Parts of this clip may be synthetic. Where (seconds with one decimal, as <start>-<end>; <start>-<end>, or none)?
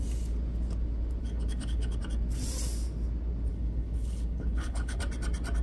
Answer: 1.2-2.0; 3.5-5.0